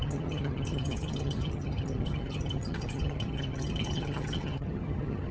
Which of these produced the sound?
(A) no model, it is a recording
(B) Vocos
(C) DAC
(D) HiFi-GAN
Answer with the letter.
D